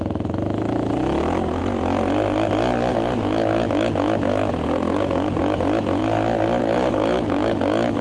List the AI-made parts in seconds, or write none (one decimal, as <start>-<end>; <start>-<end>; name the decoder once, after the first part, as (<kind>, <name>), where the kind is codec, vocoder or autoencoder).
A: 0.0-1.6 (autoencoder, DAC-VAE); 2.9-6.0; 6.6-8.0